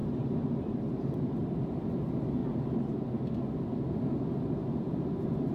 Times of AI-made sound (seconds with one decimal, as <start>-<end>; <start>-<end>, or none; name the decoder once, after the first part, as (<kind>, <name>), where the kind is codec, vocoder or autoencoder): none